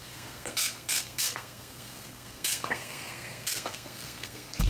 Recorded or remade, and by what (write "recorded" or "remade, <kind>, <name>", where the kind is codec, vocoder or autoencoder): remade, codec, SNAC